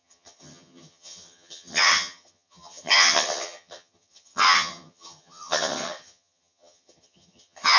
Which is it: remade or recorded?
remade